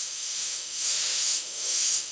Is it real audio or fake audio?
fake